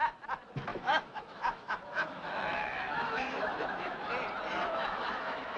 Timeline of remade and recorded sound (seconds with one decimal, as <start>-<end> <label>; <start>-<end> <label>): 0.0-0.7 recorded; 0.7-4.1 remade; 4.1-4.6 recorded; 4.6-5.6 remade